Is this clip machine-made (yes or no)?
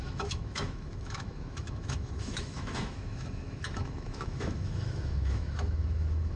yes